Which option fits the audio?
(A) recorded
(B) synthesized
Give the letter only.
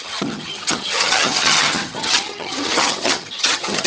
B